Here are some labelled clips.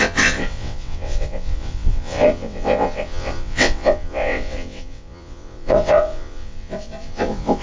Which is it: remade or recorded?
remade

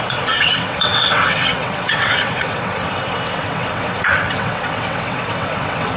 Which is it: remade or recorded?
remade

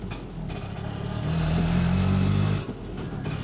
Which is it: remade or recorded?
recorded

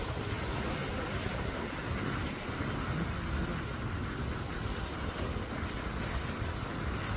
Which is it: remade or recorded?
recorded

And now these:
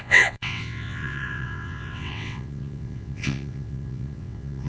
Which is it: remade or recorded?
remade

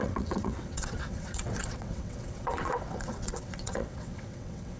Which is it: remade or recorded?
remade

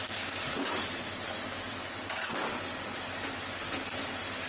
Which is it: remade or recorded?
recorded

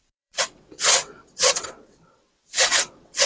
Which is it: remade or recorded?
remade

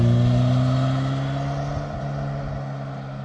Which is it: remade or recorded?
recorded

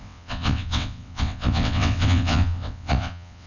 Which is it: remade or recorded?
remade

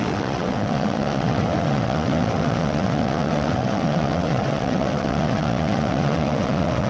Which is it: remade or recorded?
remade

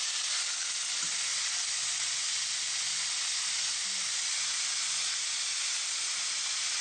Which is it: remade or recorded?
recorded